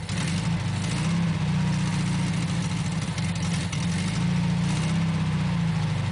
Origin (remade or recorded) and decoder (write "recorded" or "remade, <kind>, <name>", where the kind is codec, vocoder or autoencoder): recorded